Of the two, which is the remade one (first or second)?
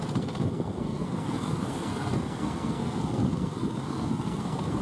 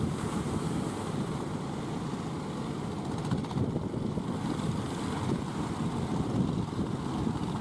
first